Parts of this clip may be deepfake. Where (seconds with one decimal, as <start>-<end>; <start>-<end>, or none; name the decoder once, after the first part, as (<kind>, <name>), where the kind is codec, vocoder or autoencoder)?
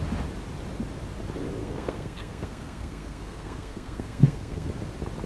1.6-4.7 (codec, SNAC)